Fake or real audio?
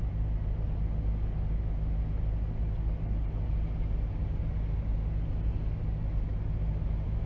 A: real